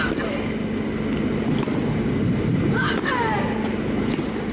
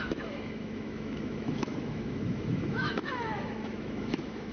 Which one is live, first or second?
first